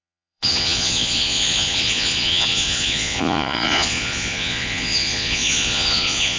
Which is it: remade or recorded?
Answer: remade